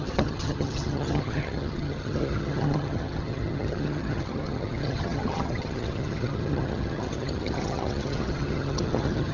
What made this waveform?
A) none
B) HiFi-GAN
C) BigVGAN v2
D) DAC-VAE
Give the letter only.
B